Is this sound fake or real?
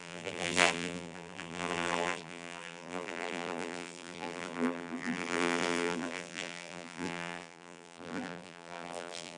fake